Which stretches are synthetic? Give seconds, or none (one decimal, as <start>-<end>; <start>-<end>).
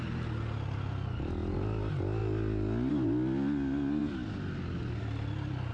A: none